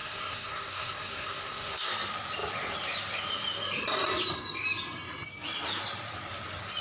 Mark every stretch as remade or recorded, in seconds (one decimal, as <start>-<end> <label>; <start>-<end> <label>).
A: 0.0-1.9 remade; 1.9-6.8 recorded